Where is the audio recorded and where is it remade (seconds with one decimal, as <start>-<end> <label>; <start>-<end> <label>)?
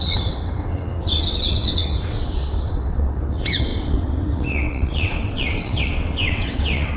0.0-7.0 remade